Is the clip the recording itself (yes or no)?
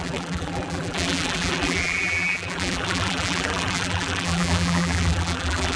no